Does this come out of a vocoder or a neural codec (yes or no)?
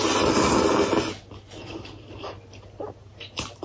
no